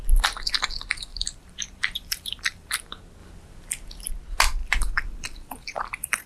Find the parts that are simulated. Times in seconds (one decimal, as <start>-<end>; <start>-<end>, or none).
1.1-2.7; 4.6-6.3